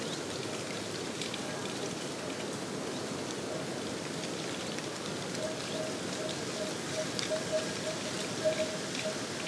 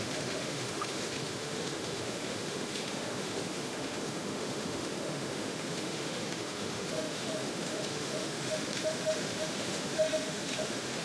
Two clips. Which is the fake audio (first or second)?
second